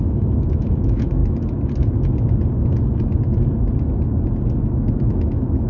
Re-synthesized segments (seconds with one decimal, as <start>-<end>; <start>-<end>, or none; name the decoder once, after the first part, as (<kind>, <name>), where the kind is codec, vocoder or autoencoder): 0.0-1.2 (autoencoder, DAC-VAE); 4.6-5.7